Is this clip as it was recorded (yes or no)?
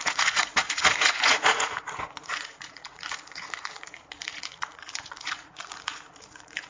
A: no